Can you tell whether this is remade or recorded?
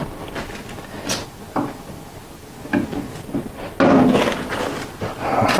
recorded